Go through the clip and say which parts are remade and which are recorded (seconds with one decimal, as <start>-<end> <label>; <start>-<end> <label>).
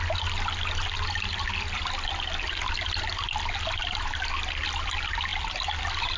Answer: 0.0-6.2 recorded